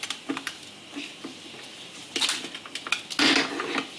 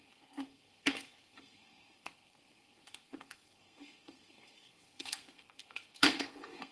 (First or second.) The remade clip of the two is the second